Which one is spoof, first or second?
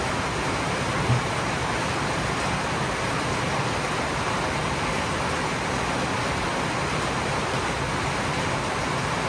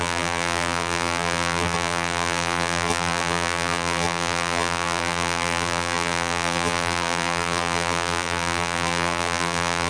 second